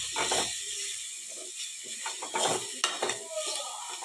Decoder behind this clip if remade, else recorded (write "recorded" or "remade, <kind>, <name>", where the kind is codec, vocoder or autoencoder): recorded